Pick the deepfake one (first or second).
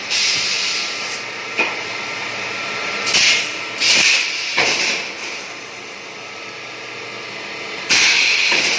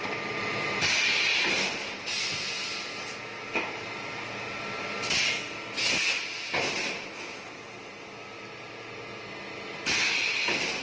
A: first